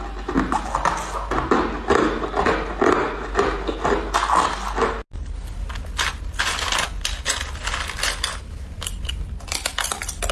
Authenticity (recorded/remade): recorded